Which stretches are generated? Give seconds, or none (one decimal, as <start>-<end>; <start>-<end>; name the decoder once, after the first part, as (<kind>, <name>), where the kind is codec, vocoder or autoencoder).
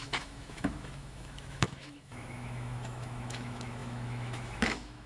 0.0-5.1 (autoencoder, DAC-VAE)